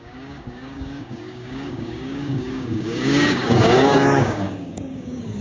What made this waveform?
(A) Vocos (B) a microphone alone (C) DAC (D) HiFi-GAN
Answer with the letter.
C